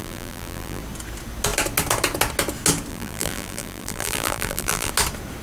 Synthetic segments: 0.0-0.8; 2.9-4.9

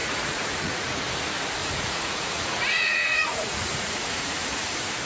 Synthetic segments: 0.0-1.0; 1.6-4.6

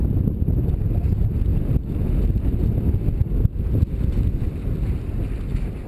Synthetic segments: none